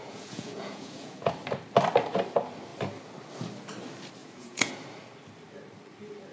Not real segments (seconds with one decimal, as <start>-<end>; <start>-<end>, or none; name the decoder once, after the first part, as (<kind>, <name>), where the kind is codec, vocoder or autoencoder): 0.0-1.3 (vocoder, Vocos); 4.2-4.7